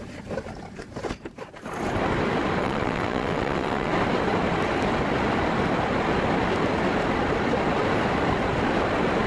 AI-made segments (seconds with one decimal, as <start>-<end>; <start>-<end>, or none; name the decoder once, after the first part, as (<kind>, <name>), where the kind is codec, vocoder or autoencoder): 2.6-3.9 (vocoder, WaveNeXt)